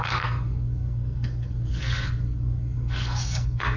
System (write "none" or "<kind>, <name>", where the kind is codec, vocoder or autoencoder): codec, SNAC